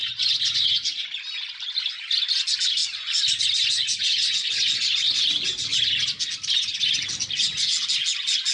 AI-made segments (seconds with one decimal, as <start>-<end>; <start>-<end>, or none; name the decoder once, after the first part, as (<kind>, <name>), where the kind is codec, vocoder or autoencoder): none